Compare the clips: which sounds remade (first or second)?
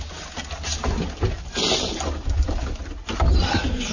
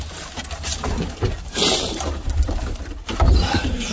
second